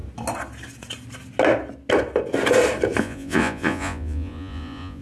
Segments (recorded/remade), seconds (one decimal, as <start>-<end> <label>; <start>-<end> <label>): 0.0-3.0 recorded; 3.0-5.0 remade